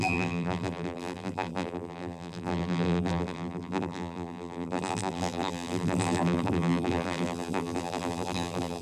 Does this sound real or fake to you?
fake